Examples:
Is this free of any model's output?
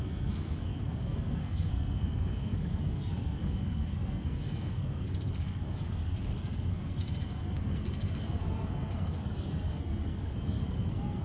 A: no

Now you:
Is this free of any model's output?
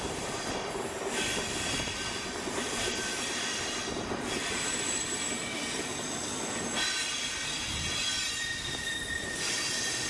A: no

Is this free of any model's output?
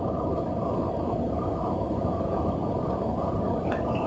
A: no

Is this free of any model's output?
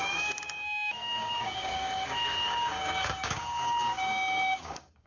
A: no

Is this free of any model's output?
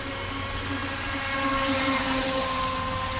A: yes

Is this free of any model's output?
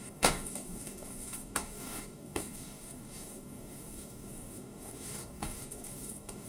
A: no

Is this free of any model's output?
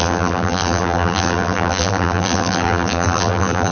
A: no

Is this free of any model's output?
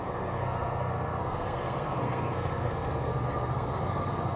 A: no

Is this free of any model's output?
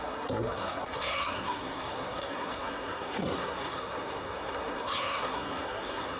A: no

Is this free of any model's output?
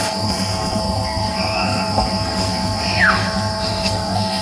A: no